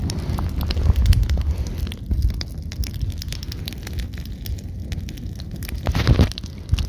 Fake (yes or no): no